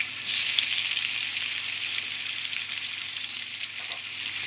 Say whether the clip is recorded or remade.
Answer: recorded